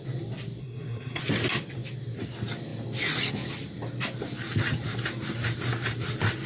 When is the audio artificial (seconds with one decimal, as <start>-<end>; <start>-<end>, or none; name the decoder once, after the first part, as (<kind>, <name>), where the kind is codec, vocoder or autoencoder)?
0.6-1.2 (codec, SNAC)